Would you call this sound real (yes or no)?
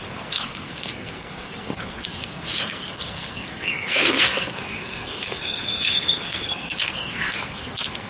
no